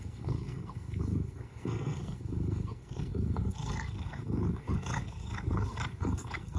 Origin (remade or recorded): remade